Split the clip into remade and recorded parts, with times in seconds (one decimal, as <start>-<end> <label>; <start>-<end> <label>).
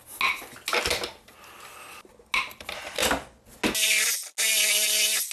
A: 0.0-5.3 recorded